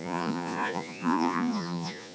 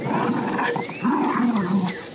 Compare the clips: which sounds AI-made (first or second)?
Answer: first